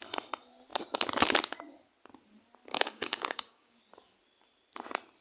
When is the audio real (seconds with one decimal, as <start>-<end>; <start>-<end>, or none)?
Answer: 0.0-2.7; 3.8-5.2

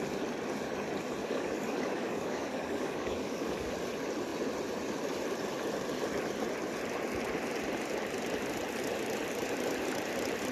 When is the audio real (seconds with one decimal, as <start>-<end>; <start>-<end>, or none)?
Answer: 0.0-1.2; 3.7-10.5

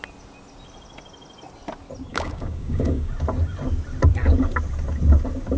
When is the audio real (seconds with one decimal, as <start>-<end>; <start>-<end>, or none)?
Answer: 0.0-2.1; 3.1-5.6

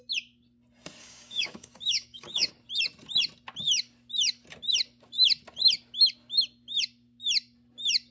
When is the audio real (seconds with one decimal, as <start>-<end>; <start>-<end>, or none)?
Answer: 0.0-1.0; 2.5-8.1

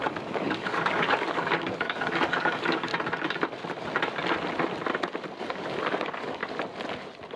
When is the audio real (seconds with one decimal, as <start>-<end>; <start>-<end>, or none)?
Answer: 2.9-5.4; 6.4-7.4